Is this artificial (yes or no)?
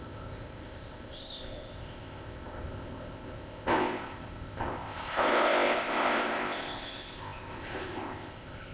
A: yes